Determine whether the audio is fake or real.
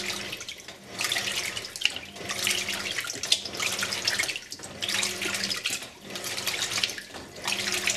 real